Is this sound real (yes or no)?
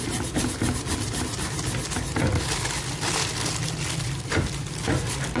yes